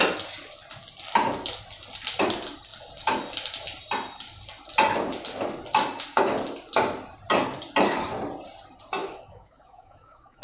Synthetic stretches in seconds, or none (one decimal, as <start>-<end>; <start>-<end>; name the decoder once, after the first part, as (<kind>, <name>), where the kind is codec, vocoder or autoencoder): 9.0-10.4 (autoencoder, DAC-VAE)